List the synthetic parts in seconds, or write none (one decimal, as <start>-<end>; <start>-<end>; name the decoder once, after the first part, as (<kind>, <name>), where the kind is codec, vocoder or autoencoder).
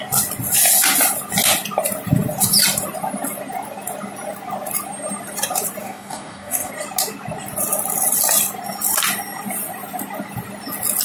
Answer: 5.8-6.7 (codec, DAC)